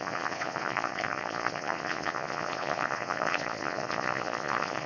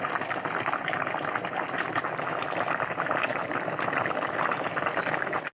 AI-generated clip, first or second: first